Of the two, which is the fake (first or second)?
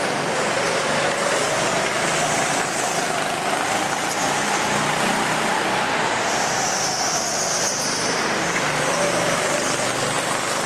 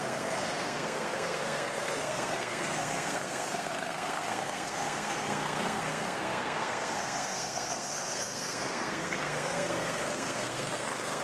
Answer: second